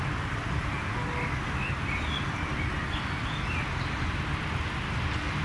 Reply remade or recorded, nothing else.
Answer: recorded